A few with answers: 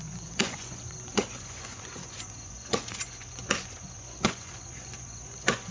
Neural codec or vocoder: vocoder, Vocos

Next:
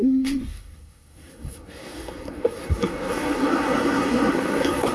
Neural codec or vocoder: codec, SNAC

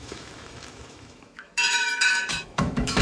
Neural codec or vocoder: autoencoder, DAC-VAE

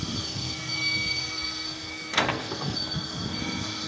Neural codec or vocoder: codec, SNAC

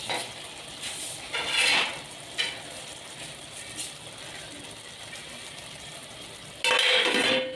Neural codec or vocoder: none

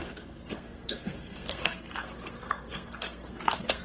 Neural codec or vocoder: codec, SNAC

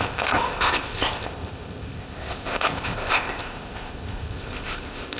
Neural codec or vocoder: codec, ZipCodec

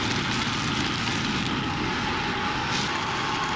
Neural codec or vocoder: none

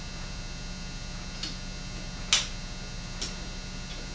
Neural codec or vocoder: none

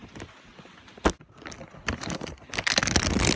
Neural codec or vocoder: none